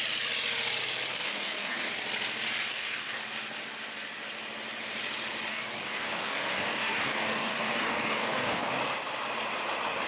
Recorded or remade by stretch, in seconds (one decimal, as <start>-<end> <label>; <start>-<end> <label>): 0.0-1.1 recorded; 1.1-1.9 remade; 1.9-2.7 recorded; 2.7-3.2 remade; 3.2-5.5 recorded; 5.5-8.7 remade; 8.7-10.1 recorded